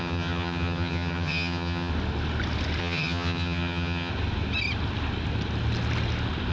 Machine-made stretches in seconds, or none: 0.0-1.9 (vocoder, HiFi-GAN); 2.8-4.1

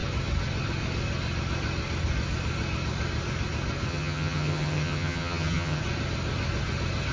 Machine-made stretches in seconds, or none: 3.9-5.8 (vocoder, HiFi-GAN)

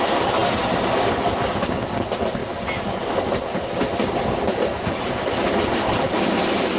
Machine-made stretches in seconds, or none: none

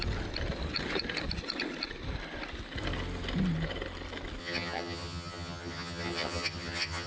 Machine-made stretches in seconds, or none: 4.4-7.1 (vocoder, HiFi-GAN)

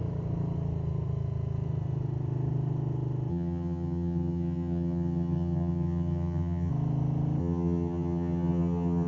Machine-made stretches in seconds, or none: 3.3-6.7 (vocoder, HiFi-GAN); 7.4-9.1

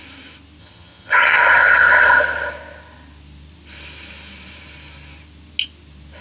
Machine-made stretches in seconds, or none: 0.6-1.4 (vocoder, HiFi-GAN)

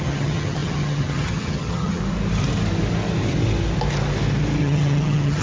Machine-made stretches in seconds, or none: 0.0-2.0 (vocoder, HiFi-GAN); 4.6-5.4